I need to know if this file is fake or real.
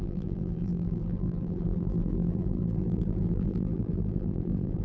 fake